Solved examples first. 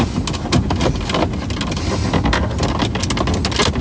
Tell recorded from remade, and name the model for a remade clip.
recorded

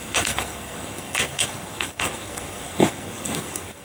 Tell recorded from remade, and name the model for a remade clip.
remade, codec, SNAC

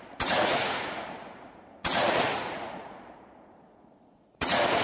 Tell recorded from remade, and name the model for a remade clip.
remade, vocoder, Vocos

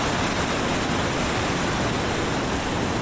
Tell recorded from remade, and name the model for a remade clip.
recorded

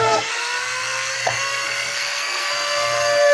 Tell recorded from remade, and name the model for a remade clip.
remade, codec, SNAC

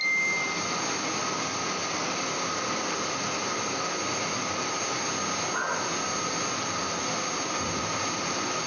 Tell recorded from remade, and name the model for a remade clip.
recorded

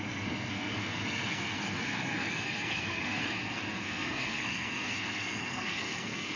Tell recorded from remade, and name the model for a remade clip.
remade, codec, SNAC